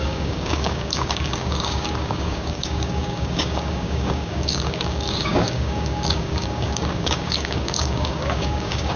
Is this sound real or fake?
fake